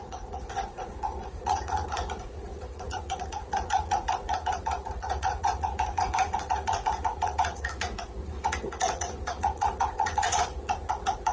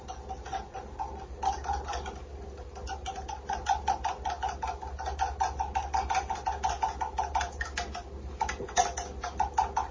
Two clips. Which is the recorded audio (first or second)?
second